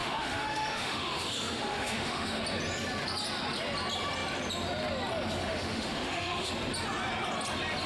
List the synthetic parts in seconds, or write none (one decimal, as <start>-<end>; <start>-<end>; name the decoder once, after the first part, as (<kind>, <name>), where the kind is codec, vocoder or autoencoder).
0.0-2.4 (autoencoder, DAC-VAE); 5.4-6.5